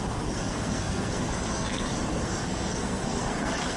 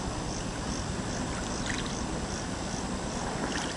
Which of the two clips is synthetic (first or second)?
first